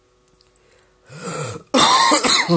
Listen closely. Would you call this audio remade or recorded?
recorded